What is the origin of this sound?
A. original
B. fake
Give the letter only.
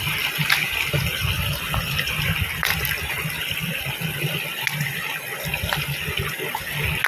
A